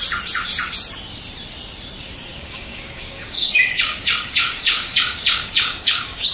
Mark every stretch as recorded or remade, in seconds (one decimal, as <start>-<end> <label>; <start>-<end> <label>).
0.0-2.3 recorded; 2.3-6.3 remade